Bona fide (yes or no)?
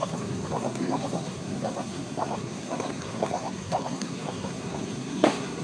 no